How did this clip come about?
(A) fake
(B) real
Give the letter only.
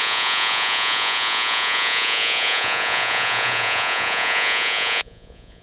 A